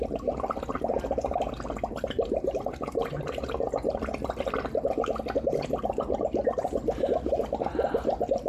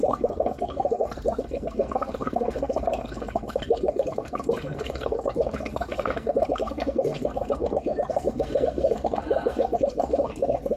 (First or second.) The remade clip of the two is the second